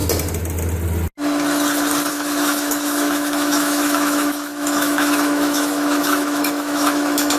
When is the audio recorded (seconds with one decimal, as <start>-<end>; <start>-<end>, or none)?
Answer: 0.0-2.1